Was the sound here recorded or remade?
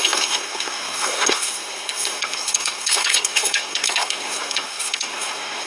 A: remade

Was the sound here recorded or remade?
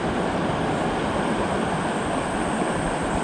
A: recorded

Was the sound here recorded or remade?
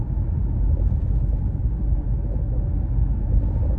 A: recorded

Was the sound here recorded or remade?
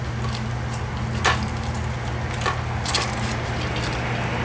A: recorded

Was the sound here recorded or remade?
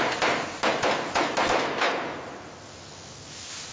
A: recorded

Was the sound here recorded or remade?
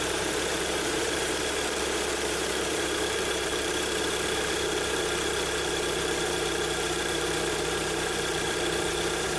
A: remade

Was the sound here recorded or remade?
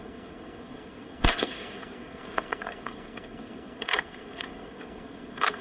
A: remade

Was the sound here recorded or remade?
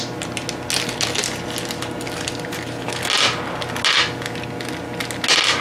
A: recorded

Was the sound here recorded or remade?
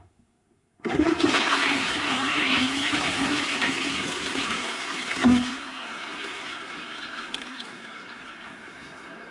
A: remade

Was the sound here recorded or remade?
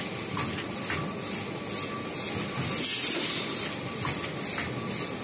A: recorded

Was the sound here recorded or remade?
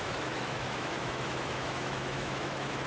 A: remade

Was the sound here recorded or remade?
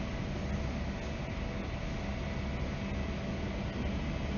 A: recorded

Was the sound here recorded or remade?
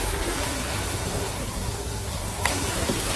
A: remade